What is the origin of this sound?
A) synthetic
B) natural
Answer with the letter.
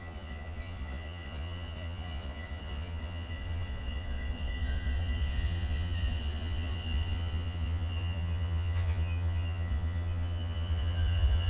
A